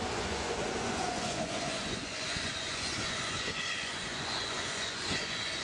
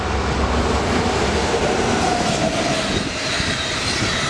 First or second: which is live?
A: second